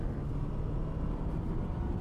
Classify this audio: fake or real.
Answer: real